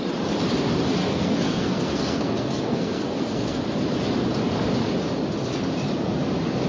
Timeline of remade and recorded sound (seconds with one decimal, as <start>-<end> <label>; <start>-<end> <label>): 0.0-1.0 recorded; 1.0-3.6 remade; 3.6-6.7 recorded